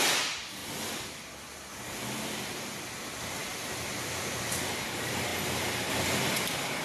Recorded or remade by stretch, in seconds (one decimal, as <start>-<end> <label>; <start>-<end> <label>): 0.0-0.6 recorded; 0.6-1.5 remade; 1.5-3.4 recorded; 3.4-4.4 remade; 4.4-6.8 recorded